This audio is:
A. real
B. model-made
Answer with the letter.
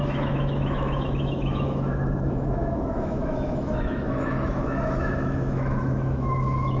B